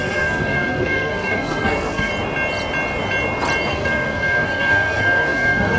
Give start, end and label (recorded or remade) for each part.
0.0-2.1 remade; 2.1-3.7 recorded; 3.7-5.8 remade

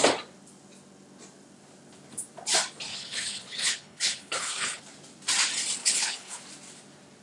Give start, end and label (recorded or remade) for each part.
0.0-2.9 recorded; 2.9-4.8 remade; 4.8-5.8 recorded; 5.8-6.4 remade; 6.4-7.2 recorded

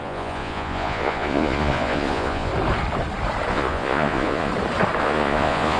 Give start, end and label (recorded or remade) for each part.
0.0-2.5 remade; 2.5-3.5 recorded; 3.5-4.5 remade; 4.5-5.0 recorded; 5.0-5.8 remade

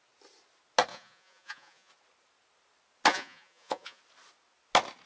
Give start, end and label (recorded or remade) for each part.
0.0-0.9 recorded; 0.9-1.9 remade; 1.9-3.1 recorded; 3.1-4.0 remade; 4.0-5.1 recorded

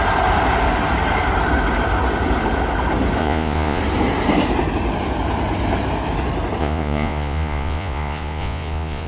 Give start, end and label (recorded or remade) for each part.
0.0-3.2 recorded; 3.2-3.8 remade; 3.8-6.6 recorded; 6.6-9.1 remade

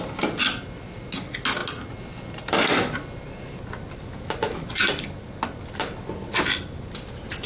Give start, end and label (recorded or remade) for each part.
0.0-7.5 recorded

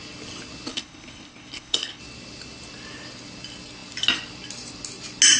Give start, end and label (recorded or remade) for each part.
0.0-0.7 recorded; 0.7-2.0 remade; 2.0-5.4 recorded